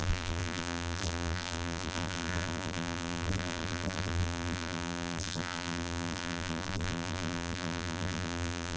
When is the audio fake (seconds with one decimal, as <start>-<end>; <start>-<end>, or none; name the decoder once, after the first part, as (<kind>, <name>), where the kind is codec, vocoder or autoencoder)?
0.0-8.8 (vocoder, BigVGAN v2)